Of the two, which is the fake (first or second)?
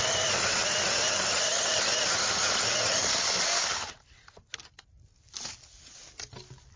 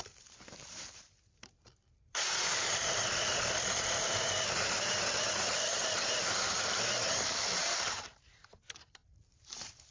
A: second